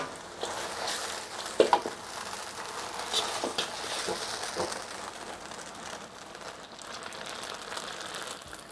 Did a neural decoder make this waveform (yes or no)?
no